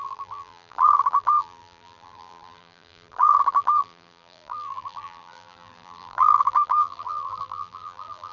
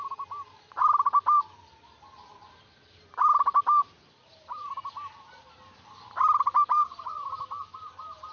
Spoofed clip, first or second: first